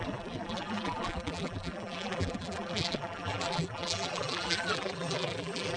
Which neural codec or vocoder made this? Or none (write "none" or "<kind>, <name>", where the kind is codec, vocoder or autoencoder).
vocoder, BigVGAN v2